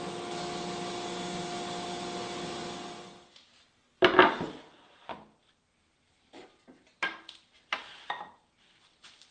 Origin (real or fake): real